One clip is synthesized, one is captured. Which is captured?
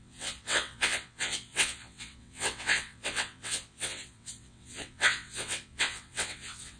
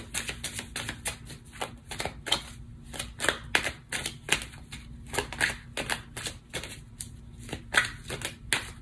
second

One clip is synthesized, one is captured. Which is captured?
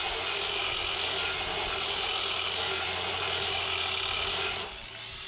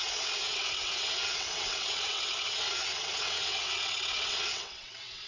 first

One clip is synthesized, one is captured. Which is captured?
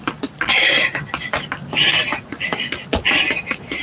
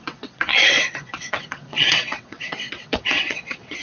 first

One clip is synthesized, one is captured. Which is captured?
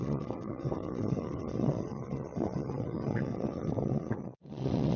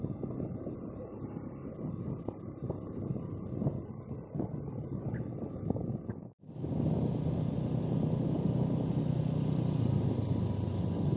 second